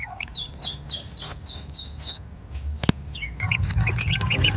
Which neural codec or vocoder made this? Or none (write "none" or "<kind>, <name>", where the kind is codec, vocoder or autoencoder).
none